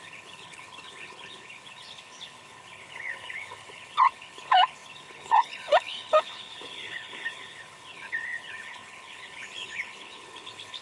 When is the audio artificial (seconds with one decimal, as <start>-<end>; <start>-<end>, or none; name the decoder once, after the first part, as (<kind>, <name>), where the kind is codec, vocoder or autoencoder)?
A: 0.0-10.8 (codec, HILCodec)